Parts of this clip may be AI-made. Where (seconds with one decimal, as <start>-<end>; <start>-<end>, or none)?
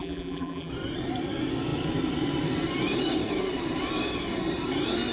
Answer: 0.0-0.7